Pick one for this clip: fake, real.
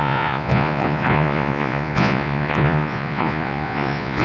fake